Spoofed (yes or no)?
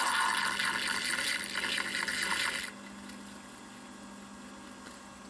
no